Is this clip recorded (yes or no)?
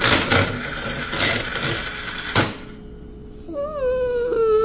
yes